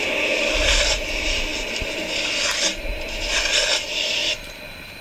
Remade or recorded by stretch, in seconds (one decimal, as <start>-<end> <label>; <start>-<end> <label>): 0.0-5.0 recorded